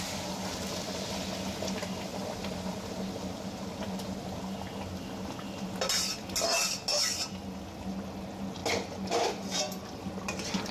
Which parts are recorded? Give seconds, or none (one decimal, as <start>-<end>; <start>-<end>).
0.0-10.7